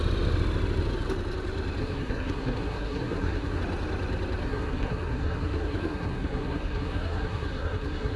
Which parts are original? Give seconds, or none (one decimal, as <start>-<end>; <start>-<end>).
0.0-1.8; 3.6-4.4